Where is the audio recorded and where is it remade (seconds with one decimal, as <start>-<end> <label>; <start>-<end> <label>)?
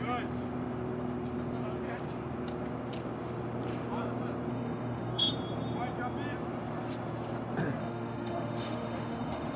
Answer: 0.0-4.5 recorded; 4.5-5.3 remade; 5.3-7.8 recorded; 7.8-9.6 remade